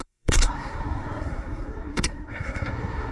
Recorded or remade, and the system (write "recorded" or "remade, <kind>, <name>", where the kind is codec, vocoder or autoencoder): remade, codec, SNAC